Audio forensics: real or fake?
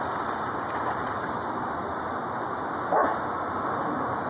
real